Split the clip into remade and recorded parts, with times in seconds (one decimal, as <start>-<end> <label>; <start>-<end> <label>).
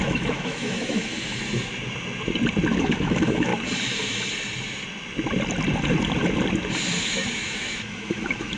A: 0.0-1.1 remade; 1.1-2.8 recorded; 2.8-3.5 remade; 3.5-7.0 recorded; 7.0-8.6 remade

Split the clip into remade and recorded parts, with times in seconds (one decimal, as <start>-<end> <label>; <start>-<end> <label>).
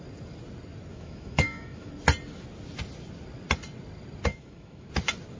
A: 0.0-0.9 recorded; 0.9-1.9 remade; 1.9-4.3 recorded; 4.3-4.9 remade; 4.9-5.4 recorded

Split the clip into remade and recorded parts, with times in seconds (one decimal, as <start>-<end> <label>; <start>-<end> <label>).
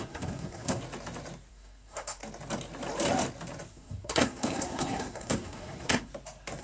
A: 0.0-0.8 remade; 0.8-1.5 recorded; 1.5-2.2 remade; 2.2-3.7 recorded; 3.7-6.1 remade; 6.1-6.6 recorded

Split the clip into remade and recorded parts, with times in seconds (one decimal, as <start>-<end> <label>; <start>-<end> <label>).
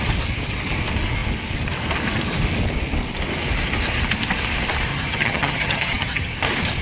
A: 0.0-4.9 recorded; 4.9-6.3 remade; 6.3-6.8 recorded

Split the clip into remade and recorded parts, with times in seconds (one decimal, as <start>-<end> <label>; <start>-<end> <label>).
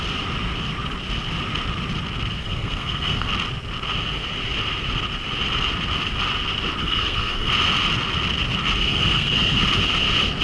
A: 0.0-2.4 recorded; 2.4-3.3 remade; 3.3-6.8 recorded; 6.8-7.5 remade; 7.5-8.9 recorded; 8.9-9.6 remade; 9.6-10.4 recorded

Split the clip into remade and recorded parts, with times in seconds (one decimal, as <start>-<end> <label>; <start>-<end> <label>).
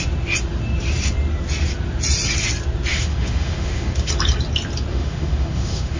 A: 0.0-2.9 recorded; 2.9-4.1 remade; 4.1-4.9 recorded; 4.9-6.0 remade